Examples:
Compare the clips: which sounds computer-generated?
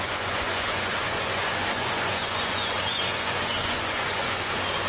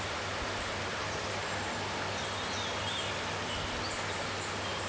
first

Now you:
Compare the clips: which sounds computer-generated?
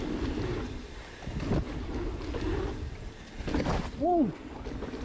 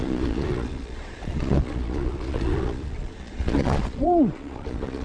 second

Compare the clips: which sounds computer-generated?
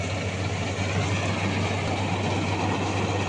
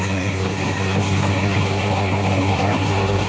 second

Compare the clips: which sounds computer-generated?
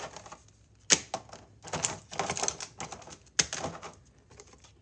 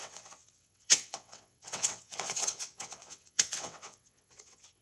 second